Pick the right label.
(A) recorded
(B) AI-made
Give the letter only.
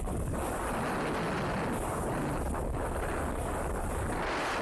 A